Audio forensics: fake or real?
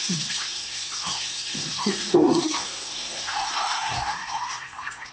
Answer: fake